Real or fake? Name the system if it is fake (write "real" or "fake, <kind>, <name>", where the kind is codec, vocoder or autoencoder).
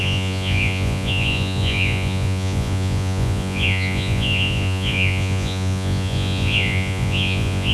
fake, vocoder, Vocos